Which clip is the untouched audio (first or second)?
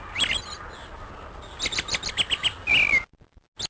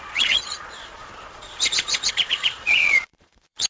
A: first